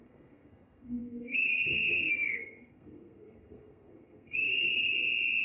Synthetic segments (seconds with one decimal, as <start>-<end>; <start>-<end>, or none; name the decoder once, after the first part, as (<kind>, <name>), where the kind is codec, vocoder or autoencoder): 0.0-4.7 (codec, SNAC)